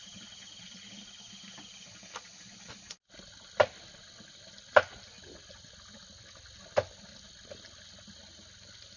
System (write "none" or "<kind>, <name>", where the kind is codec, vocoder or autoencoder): none